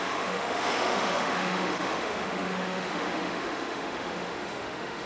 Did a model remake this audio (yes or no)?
yes